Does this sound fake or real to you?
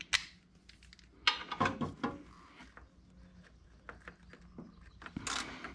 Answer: real